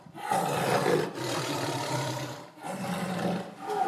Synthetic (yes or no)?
yes